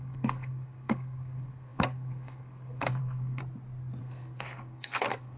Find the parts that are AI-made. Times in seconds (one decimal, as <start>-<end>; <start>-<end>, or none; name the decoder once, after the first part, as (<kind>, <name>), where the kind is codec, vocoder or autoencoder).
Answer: 0.0-3.4 (codec, SNAC); 4.0-5.4